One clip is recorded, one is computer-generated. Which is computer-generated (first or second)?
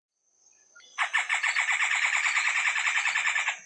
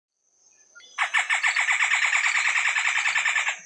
first